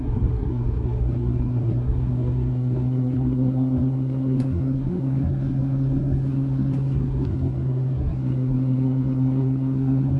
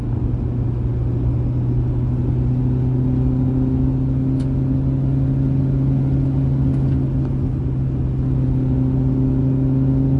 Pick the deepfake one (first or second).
first